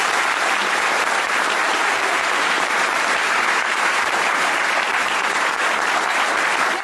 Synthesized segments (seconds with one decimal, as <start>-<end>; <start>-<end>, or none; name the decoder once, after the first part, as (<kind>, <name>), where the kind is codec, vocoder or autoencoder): 0.6-4.2 (vocoder, BigVGAN v2); 4.9-5.6